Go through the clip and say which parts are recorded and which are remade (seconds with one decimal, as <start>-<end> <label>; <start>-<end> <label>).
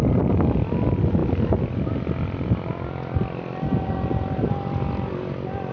0.0-5.7 recorded